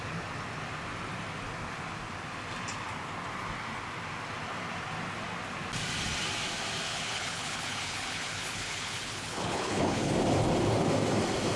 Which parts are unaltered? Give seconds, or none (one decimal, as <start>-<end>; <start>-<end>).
0.0-6.9; 10.1-11.6